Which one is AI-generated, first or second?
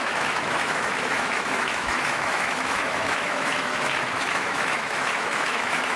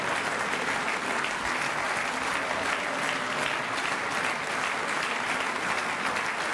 first